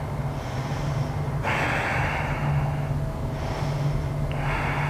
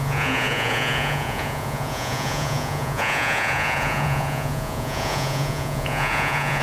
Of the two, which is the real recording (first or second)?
first